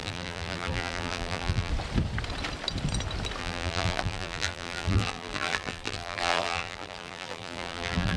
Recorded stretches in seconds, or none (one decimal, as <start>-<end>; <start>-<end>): 1.7-3.4